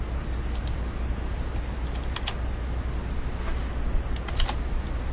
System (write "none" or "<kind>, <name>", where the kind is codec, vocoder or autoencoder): none